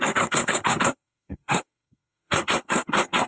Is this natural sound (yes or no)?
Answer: no